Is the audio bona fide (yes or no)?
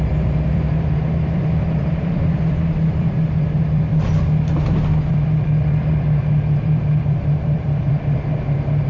no